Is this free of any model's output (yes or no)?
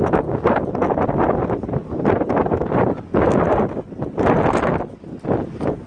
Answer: yes